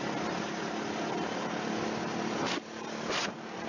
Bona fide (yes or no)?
yes